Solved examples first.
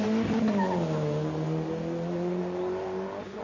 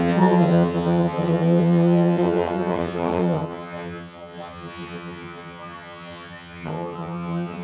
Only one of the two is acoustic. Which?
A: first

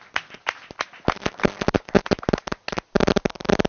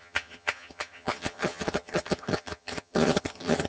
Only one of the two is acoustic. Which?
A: first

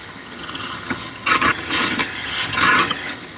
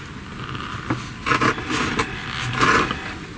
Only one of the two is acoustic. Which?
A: second